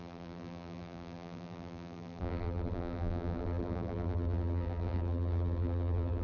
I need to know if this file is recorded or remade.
remade